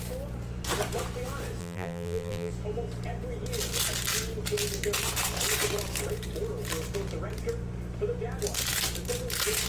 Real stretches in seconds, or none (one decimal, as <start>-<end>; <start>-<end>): 0.0-1.6; 2.5-9.7